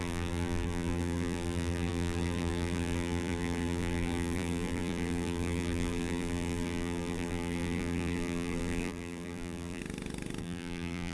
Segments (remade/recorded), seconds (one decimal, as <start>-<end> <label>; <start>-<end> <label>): 0.0-9.8 remade; 9.8-10.4 recorded; 10.4-11.1 remade